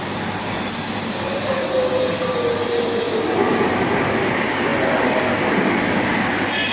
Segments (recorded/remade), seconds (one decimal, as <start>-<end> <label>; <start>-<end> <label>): 0.0-6.7 recorded